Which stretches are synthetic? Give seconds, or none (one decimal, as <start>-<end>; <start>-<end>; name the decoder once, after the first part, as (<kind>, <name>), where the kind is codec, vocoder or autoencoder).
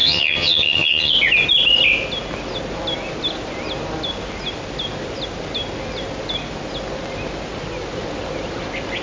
0.0-1.1 (vocoder, HiFi-GAN)